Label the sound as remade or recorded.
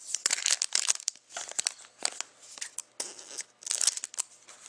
recorded